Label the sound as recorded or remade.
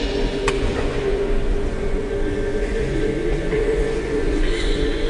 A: remade